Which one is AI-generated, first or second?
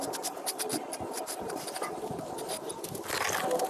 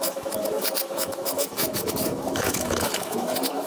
second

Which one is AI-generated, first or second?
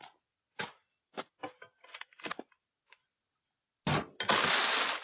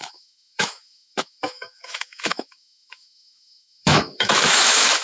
second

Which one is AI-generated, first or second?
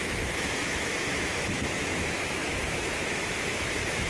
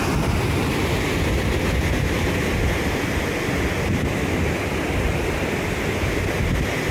first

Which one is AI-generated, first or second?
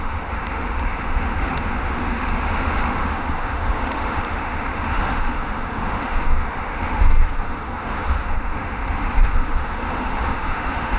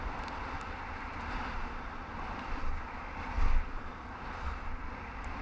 first